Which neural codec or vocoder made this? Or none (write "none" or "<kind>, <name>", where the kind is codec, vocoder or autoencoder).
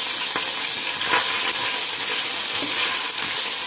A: none